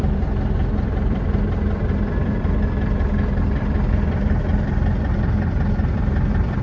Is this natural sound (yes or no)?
no